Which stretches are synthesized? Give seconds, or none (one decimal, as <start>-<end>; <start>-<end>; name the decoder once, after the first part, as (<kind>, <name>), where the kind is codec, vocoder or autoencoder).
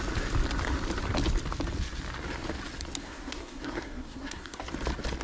3.0-4.6 (codec, SNAC)